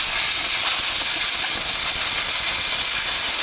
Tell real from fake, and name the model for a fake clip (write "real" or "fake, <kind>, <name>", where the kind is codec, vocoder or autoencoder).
real